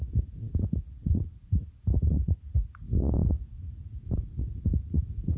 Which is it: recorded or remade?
remade